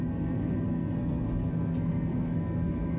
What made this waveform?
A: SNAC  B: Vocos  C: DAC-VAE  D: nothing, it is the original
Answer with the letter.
A